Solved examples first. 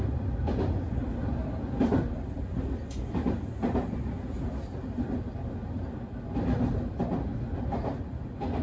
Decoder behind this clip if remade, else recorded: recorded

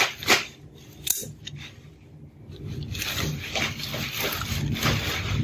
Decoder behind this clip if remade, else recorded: recorded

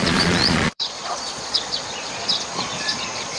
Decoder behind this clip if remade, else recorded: remade, vocoder, Vocos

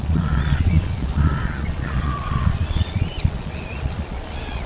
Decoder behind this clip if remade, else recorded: remade, vocoder, Vocos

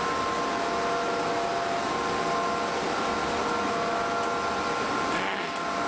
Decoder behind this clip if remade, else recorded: recorded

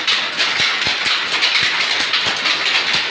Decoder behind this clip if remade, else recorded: recorded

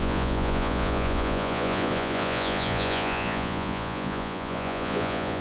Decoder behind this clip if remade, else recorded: remade, vocoder, Vocos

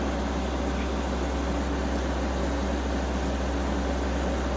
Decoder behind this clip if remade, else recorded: recorded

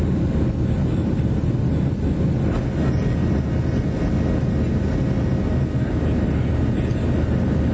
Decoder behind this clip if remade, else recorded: recorded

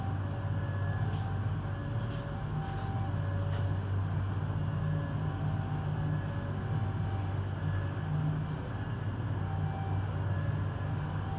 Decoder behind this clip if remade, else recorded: recorded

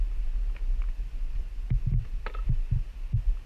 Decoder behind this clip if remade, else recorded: recorded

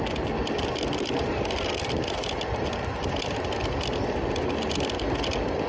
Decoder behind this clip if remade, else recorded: recorded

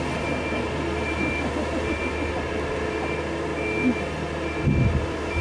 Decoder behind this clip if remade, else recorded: recorded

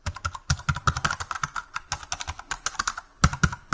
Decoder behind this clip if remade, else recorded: recorded